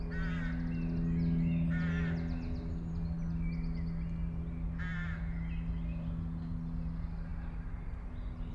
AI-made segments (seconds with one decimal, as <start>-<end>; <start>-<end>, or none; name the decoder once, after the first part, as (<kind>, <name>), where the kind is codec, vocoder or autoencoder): none